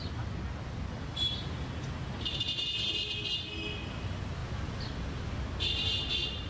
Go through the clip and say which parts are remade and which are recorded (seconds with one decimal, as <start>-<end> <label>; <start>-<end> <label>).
0.0-6.5 recorded